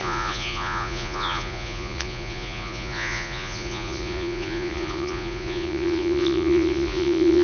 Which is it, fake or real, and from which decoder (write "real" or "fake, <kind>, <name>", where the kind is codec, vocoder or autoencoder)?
fake, vocoder, Vocos